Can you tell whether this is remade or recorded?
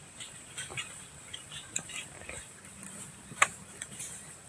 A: remade